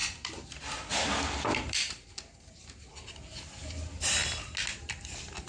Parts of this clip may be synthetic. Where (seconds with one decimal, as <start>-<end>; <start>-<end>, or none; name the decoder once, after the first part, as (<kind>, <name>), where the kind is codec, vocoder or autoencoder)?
0.0-2.5 (vocoder, BigVGAN v2)